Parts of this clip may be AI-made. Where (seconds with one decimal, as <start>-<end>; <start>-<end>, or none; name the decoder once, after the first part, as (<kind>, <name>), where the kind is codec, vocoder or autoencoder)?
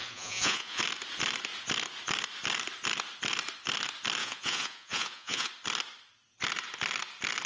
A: 0.0-0.8 (vocoder, Vocos); 4.2-5.5